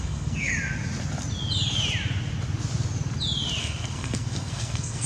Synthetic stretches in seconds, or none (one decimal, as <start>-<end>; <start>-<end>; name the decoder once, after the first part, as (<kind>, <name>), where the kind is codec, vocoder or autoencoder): 0.0-0.5 (codec, SNAC); 3.6-5.1